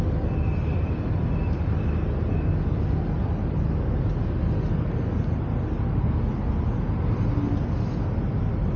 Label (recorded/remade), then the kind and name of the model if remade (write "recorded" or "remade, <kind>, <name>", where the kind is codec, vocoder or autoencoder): recorded